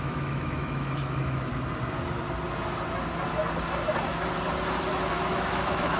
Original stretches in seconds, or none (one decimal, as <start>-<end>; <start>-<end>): 1.5-5.1